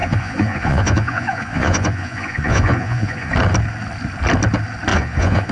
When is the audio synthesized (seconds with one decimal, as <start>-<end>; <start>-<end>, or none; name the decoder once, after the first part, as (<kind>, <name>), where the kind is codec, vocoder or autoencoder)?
0.0-3.3 (vocoder, Vocos); 4.9-5.5

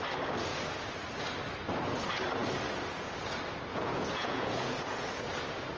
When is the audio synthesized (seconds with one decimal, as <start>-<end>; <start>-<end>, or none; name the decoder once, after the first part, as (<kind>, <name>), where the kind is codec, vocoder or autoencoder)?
3.7-5.1 (vocoder, Vocos)

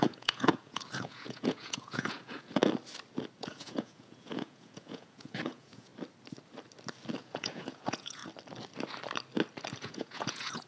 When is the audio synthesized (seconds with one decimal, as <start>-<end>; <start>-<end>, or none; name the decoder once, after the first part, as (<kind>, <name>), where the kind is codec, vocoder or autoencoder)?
0.0-2.6 (vocoder, Vocos); 3.4-5.9; 7.2-8.2; 9.8-10.7

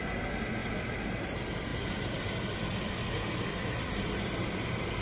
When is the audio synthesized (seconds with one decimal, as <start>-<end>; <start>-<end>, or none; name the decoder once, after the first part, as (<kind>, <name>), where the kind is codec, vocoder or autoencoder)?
none

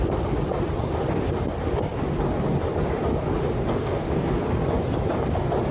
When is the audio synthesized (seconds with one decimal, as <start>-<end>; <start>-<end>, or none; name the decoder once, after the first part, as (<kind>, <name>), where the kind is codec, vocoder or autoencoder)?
3.7-4.3 (codec, DAC)